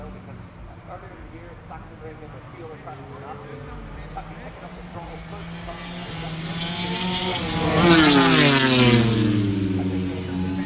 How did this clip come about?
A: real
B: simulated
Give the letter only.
A